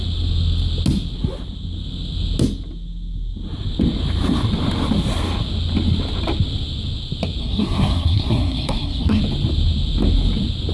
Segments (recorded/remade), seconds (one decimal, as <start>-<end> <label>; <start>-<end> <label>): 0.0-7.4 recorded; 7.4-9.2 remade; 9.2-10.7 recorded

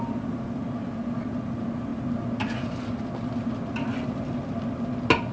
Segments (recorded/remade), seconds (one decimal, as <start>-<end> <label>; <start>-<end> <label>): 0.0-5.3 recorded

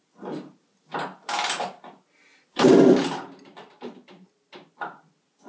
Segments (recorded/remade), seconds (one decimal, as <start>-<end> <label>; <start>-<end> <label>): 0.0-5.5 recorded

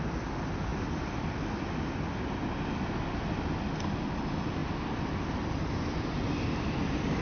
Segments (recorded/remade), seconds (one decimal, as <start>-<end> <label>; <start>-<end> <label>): 0.0-7.2 recorded